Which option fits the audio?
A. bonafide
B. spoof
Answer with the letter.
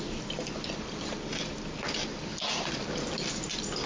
A